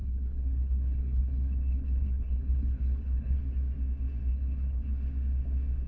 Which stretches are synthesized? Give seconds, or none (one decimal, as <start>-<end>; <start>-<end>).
0.0-3.4; 4.3-4.9